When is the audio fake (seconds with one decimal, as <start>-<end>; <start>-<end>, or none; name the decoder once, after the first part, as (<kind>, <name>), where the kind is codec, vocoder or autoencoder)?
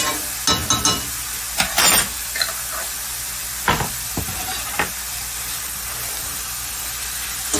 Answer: none